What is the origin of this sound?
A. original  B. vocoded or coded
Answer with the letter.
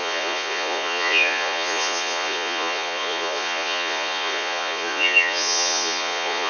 B